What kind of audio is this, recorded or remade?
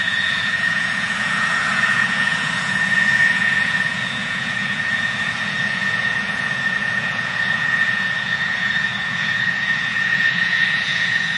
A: remade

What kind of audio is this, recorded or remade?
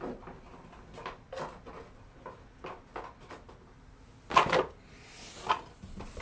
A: recorded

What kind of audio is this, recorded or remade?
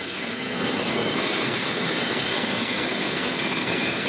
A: remade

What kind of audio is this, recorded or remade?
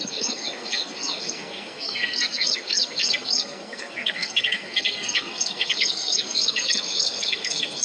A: remade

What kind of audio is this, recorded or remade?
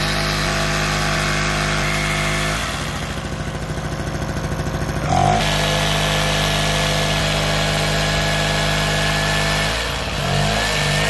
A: recorded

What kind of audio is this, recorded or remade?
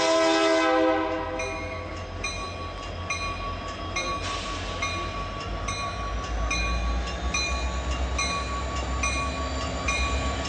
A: recorded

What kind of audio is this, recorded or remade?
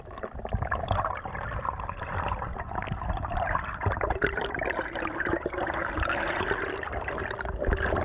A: recorded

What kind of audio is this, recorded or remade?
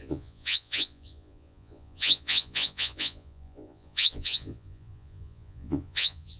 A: remade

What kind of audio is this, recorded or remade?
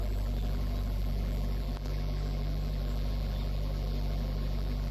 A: remade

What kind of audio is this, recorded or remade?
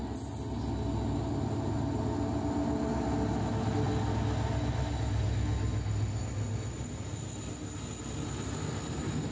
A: recorded